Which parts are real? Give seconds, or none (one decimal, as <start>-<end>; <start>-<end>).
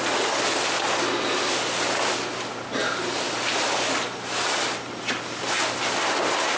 0.0-6.6